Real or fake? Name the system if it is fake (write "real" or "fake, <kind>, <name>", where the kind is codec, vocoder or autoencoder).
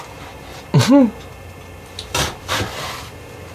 real